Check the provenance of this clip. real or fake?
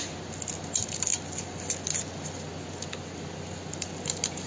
real